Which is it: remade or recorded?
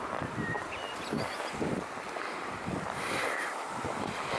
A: remade